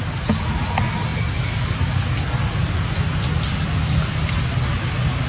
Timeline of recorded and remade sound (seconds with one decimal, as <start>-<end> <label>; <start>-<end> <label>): 0.0-5.3 recorded